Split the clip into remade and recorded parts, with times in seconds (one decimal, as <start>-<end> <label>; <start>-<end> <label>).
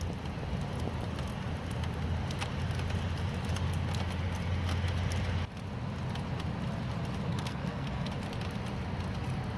0.0-7.3 recorded; 7.3-8.1 remade; 8.1-9.6 recorded